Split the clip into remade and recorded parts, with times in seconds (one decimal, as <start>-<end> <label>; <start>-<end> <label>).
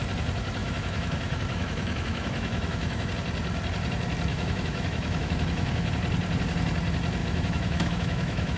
0.0-0.6 recorded; 0.6-3.1 remade; 3.1-4.3 recorded; 4.3-5.9 remade; 5.9-7.2 recorded; 7.2-8.6 remade